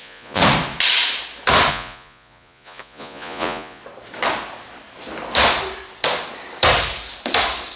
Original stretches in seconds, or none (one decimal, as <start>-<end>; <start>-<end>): 0.4-1.7; 3.8-7.8